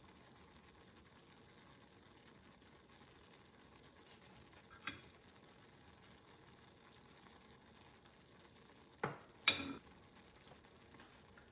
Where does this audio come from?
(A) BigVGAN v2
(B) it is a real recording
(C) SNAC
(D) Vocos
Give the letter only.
B